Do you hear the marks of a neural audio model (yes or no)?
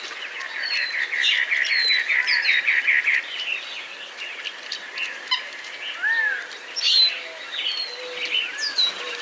yes